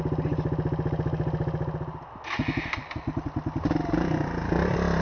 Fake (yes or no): no